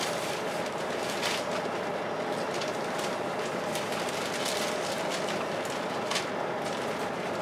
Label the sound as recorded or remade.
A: recorded